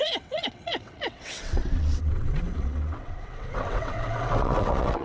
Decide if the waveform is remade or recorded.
remade